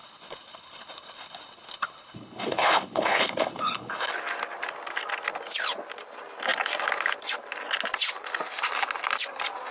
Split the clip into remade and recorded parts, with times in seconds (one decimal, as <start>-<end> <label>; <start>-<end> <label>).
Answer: 0.0-4.1 remade; 4.1-9.7 recorded